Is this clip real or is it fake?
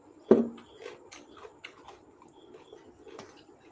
real